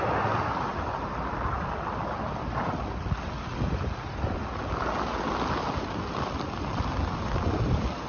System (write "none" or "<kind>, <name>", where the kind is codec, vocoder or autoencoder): vocoder, BigVGAN v2